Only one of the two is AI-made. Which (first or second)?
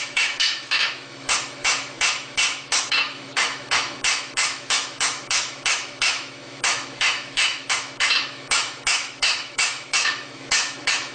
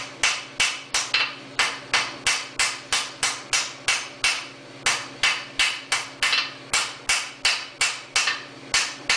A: first